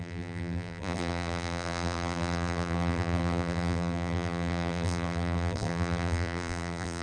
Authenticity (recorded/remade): remade